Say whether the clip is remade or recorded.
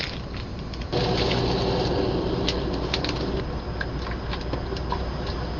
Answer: recorded